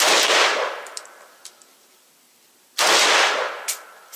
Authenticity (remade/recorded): recorded